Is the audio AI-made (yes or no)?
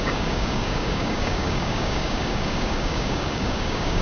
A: yes